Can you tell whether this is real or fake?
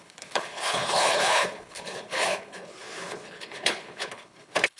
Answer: fake